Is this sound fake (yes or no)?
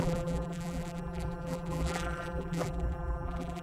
yes